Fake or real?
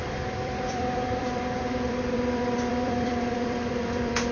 fake